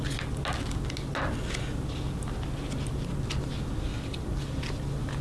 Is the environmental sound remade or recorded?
recorded